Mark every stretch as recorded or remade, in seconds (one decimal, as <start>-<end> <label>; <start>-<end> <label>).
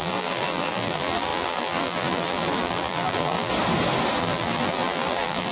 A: 0.0-3.5 remade; 3.5-4.2 recorded; 4.2-5.5 remade